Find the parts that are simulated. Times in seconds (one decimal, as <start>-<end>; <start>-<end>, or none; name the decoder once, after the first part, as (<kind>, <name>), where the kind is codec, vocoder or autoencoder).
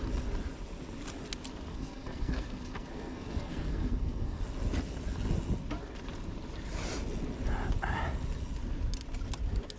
1.7-4.4 (codec, SNAC)